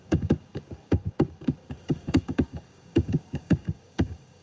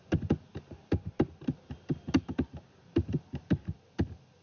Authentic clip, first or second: second